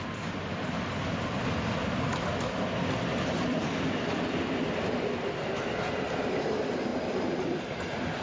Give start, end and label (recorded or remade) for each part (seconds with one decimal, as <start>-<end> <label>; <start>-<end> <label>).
0.0-8.2 recorded